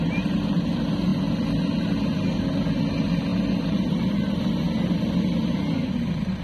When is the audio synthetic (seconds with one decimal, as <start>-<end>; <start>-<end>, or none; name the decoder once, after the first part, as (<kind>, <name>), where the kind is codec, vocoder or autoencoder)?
3.3-4.4 (vocoder, BigVGAN v2)